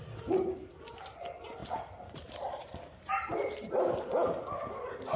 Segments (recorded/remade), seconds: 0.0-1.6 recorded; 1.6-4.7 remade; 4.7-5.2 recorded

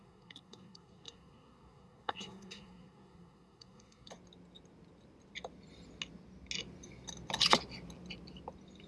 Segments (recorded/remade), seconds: 0.0-4.1 remade; 4.1-8.9 recorded

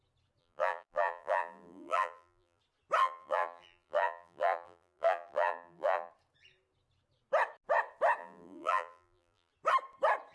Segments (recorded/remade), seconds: 0.0-0.4 recorded; 0.4-2.6 remade; 2.6-3.0 recorded; 3.0-6.1 remade; 6.1-8.2 recorded; 8.2-9.5 remade; 9.5-10.3 recorded

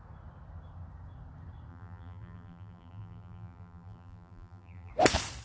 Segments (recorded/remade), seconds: 0.0-1.7 recorded; 1.7-4.9 remade; 4.9-5.4 recorded